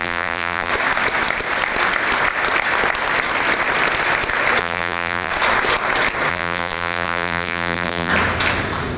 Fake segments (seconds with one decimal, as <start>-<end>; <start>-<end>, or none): 0.0-0.7; 4.6-5.3; 6.3-8.1